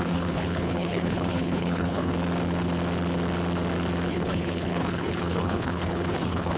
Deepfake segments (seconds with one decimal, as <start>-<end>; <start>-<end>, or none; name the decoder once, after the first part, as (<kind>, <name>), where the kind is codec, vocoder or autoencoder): 0.0-2.1 (codec, HILCodec); 4.1-6.6